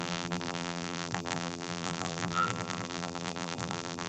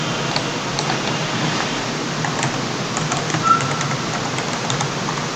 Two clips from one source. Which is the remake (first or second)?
first